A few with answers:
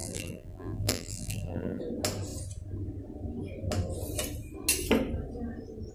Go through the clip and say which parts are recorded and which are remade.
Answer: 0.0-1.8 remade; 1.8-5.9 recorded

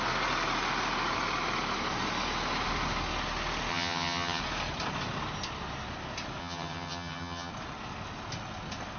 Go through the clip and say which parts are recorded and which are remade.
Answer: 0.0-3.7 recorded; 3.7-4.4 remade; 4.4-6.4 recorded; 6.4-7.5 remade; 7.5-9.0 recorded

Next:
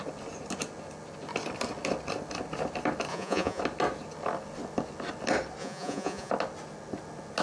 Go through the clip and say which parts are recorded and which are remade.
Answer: 0.0-3.1 recorded; 3.1-3.6 remade; 3.6-5.6 recorded; 5.6-6.3 remade; 6.3-7.4 recorded